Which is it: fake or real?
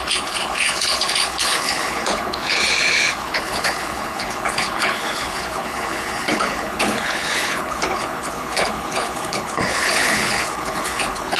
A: fake